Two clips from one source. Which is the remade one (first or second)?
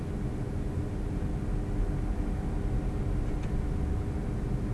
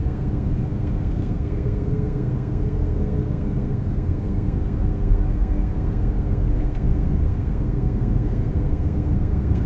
second